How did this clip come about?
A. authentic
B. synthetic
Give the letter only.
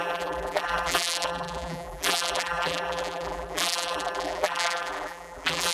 B